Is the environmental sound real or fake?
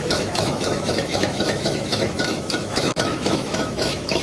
fake